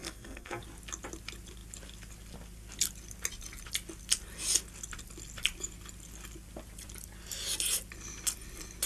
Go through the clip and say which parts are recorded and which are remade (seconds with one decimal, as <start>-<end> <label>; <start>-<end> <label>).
0.0-0.6 remade; 0.6-8.9 recorded